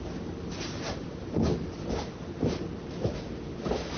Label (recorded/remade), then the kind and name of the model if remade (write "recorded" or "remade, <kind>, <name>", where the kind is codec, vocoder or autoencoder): recorded